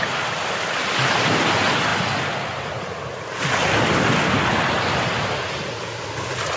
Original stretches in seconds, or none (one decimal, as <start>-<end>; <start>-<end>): 0.0-6.6